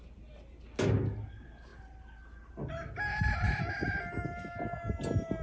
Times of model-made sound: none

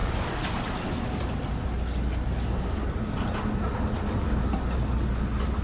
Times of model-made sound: none

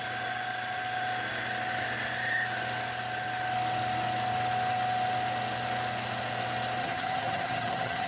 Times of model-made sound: 6.8-8.1 (vocoder, HiFi-GAN)